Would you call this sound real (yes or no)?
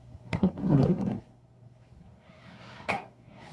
no